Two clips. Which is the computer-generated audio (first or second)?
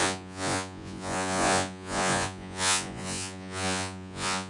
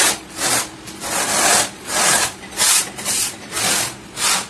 first